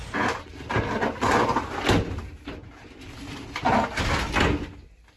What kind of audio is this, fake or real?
real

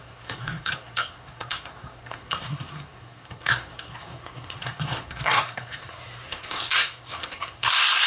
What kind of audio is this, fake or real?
fake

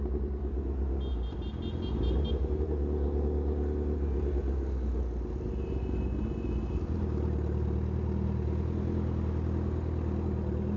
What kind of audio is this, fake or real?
real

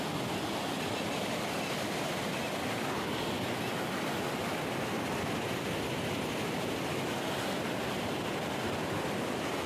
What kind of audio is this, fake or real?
real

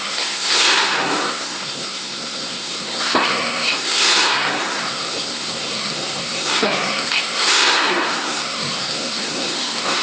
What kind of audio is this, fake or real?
fake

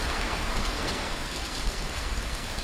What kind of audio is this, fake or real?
fake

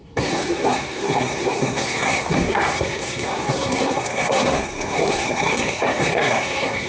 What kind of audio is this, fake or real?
fake